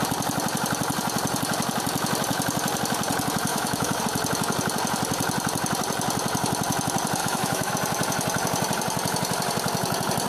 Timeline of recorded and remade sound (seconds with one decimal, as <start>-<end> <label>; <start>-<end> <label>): 0.0-3.5 recorded; 3.5-4.0 remade; 4.0-7.2 recorded; 7.2-7.7 remade; 7.7-10.3 recorded